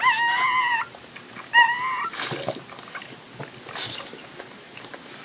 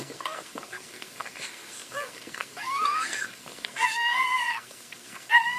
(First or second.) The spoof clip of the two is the second